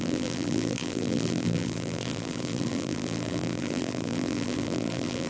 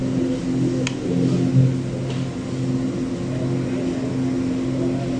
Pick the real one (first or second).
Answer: second